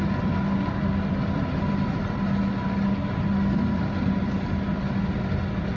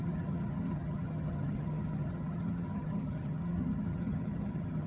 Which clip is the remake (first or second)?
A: second